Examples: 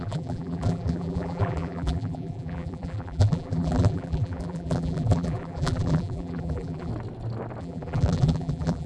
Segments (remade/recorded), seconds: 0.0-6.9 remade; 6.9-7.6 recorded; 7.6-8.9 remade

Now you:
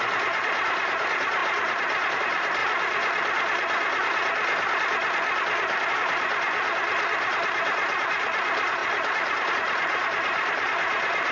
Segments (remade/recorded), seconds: 0.0-2.6 remade; 2.6-5.9 recorded; 5.9-11.3 remade

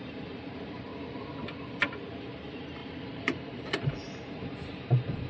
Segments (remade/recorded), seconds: 0.0-0.9 remade; 0.9-2.1 recorded; 2.1-5.3 remade

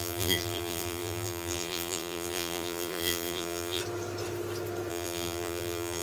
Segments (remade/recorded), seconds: 0.0-3.8 remade; 3.8-4.9 recorded; 4.9-6.0 remade